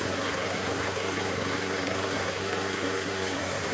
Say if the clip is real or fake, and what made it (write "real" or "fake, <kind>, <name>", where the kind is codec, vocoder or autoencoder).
fake, codec, SNAC